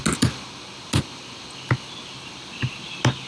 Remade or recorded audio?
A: recorded